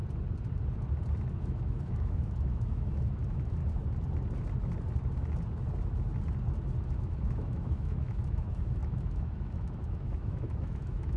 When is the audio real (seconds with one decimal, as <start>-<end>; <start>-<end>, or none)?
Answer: 0.0-1.3; 3.6-6.8